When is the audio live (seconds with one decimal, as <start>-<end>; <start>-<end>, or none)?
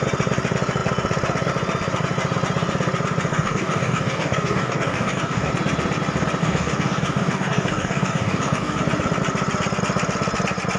0.0-3.3; 5.5-6.4; 8.8-10.8